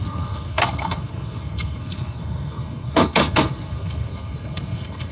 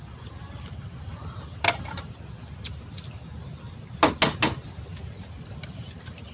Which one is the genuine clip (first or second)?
second